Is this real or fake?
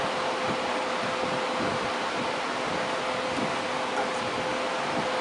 real